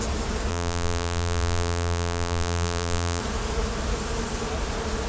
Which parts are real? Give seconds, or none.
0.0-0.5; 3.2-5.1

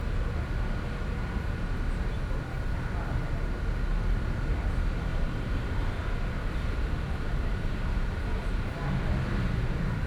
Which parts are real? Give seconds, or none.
0.0-5.1; 5.7-10.1

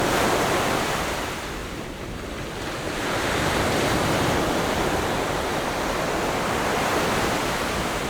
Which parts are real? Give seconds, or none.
1.6-3.5

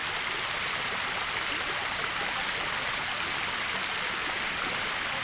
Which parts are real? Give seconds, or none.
0.0-5.2

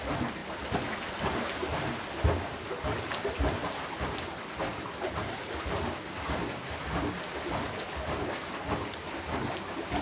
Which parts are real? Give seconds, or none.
0.0-10.0